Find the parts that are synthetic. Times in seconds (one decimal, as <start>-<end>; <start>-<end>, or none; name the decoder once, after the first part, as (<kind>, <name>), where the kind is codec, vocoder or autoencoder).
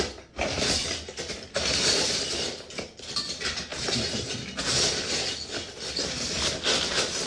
0.8-1.5 (vocoder, BigVGAN v2)